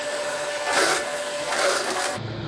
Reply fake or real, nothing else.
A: fake